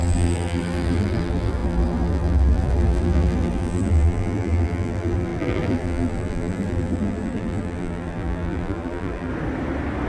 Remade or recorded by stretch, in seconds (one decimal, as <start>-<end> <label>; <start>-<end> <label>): 0.0-9.3 remade; 9.3-10.1 recorded